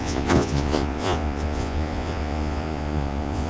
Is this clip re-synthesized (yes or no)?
yes